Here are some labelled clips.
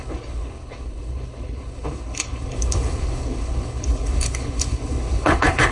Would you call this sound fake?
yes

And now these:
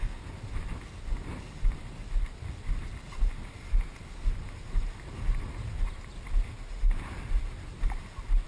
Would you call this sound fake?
no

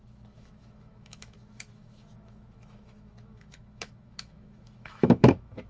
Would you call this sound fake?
yes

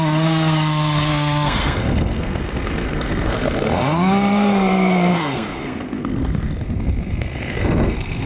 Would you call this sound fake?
yes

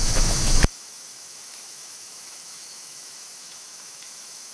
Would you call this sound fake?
yes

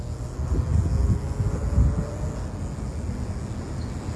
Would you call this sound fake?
no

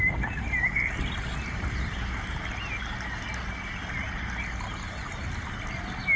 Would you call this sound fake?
no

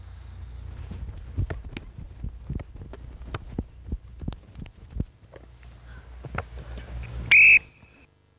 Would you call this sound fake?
no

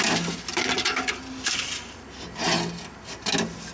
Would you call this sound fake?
no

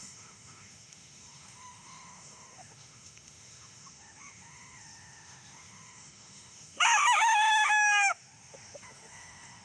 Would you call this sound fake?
yes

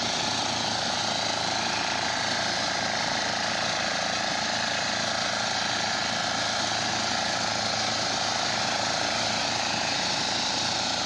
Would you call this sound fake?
no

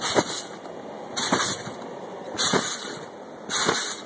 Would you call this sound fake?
no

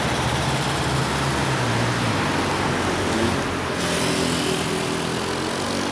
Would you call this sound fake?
no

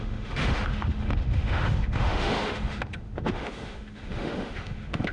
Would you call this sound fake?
yes